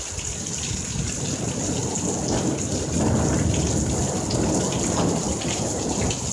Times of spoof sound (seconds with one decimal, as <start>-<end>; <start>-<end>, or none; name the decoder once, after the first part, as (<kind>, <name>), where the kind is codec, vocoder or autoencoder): none